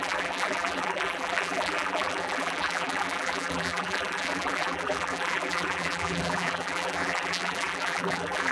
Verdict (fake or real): fake